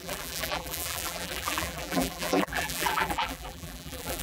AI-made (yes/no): yes